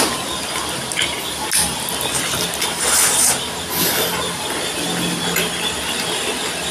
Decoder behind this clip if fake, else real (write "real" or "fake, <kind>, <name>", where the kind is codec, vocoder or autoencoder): real